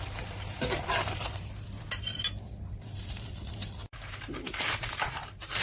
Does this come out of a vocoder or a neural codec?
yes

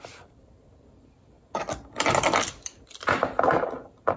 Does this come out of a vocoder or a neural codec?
no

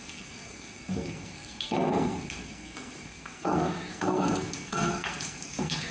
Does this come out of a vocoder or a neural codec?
yes